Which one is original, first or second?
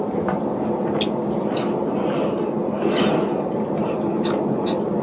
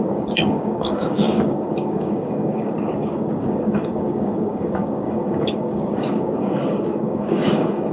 first